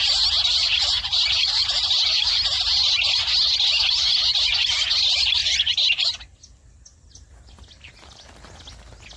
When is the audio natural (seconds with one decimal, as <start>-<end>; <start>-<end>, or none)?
0.0-9.2